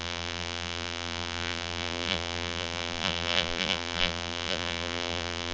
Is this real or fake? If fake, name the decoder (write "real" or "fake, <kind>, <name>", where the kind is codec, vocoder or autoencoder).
fake, vocoder, BigVGAN v2